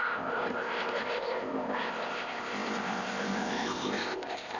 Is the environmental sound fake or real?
fake